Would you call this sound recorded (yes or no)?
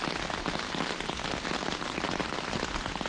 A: yes